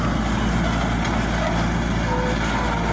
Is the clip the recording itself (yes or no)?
yes